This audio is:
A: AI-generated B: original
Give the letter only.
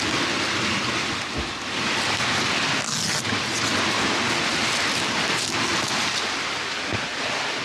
B